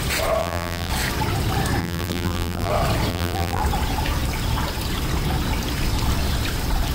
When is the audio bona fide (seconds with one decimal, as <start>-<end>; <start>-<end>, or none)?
0.0-0.4; 0.9-1.8; 2.7-3.1; 3.6-6.9